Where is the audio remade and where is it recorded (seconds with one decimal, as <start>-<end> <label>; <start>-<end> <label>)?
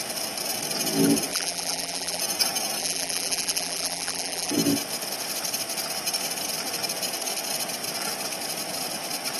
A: 0.0-1.3 recorded; 1.3-2.2 remade; 2.2-2.8 recorded; 2.8-4.5 remade; 4.5-9.4 recorded